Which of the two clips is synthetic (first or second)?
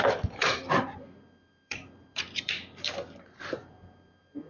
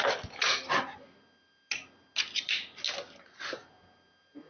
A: first